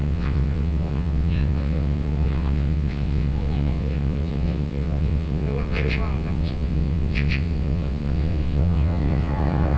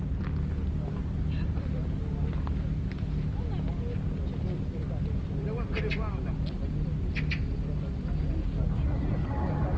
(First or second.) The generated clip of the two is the first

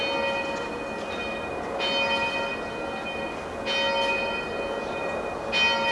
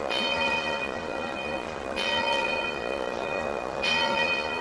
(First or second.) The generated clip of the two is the second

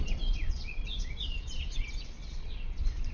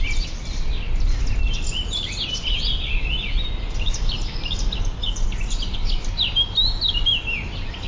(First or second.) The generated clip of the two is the first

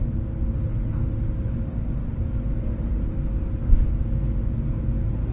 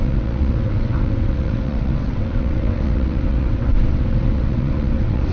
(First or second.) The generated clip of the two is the second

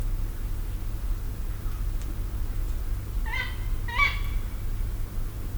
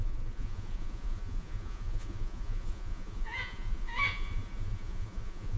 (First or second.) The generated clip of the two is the second